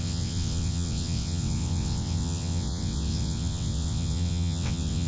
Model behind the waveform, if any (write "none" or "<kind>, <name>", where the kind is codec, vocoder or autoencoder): vocoder, WaveNeXt